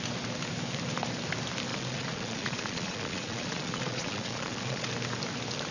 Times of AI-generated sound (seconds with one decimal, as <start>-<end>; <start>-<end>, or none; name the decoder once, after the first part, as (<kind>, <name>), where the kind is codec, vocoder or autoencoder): 1.7-4.9 (vocoder, Vocos)